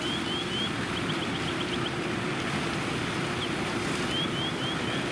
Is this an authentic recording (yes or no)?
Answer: yes